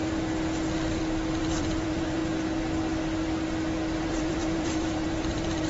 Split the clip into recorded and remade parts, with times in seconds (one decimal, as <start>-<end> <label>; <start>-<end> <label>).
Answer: 0.0-1.4 recorded; 1.4-2.2 remade; 2.2-4.0 recorded; 4.0-5.7 remade